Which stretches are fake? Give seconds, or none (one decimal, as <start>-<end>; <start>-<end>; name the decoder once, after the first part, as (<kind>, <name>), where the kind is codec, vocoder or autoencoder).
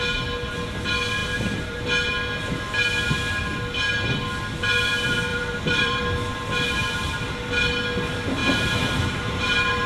1.2-1.8 (vocoder, BigVGAN v2); 5.3-6.0; 8.4-9.9